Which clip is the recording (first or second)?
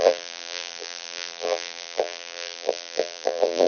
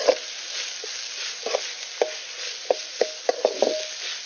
second